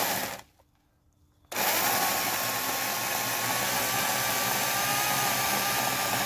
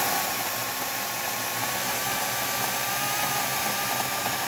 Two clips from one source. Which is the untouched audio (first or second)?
first